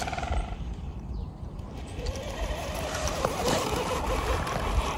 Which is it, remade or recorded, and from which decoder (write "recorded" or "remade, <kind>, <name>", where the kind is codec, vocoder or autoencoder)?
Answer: remade, vocoder, BigVGAN v2